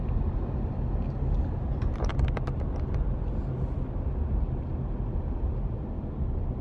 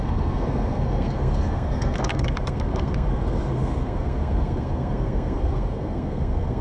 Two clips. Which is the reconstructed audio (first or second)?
second